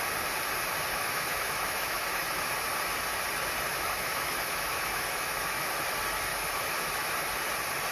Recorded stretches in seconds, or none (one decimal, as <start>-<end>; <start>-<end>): 0.0-0.9; 2.4-3.7; 5.7-6.3; 7.1-7.9